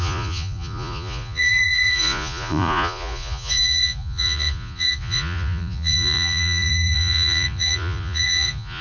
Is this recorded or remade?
remade